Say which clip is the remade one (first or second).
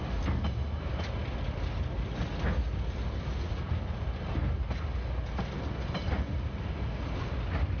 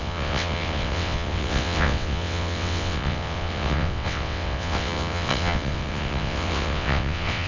second